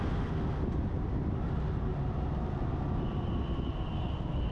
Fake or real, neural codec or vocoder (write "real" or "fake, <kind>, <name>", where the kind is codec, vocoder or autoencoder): real